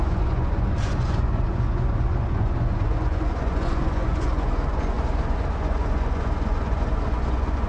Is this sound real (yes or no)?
no